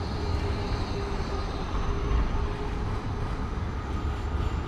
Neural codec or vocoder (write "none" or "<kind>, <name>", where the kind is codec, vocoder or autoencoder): none